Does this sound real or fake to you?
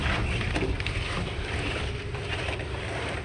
real